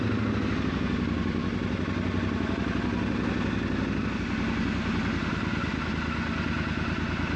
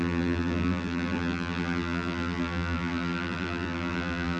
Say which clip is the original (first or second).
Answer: first